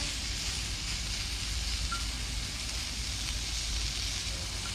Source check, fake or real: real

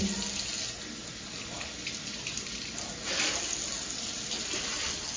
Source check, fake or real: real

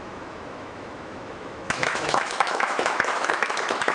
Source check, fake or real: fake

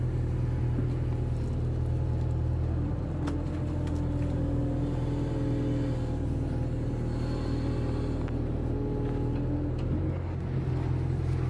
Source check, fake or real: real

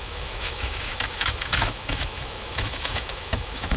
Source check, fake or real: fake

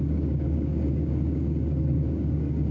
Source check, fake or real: fake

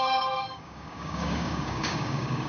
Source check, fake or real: fake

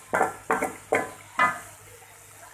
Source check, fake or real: real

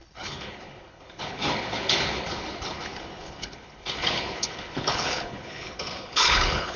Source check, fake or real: fake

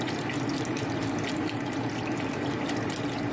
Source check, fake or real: real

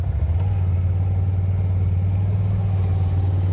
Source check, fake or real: real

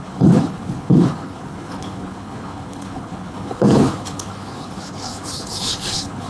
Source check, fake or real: fake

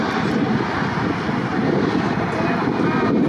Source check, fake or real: real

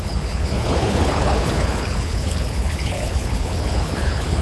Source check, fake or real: fake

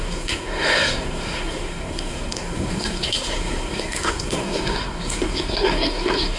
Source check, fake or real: fake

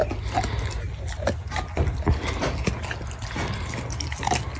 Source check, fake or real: real